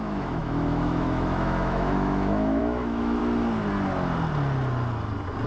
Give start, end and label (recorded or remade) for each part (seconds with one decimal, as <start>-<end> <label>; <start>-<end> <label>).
0.0-3.2 remade; 3.2-5.5 recorded